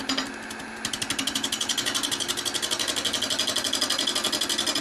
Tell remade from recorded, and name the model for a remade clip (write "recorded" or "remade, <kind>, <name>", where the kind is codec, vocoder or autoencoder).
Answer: recorded